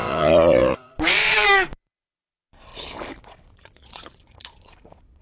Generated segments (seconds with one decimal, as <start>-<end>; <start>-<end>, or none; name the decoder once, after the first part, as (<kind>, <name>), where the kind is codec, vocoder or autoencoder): 0.0-2.7 (vocoder, Vocos); 3.2-5.2